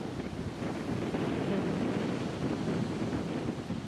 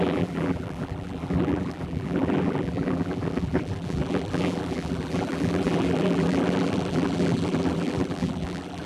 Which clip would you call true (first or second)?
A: first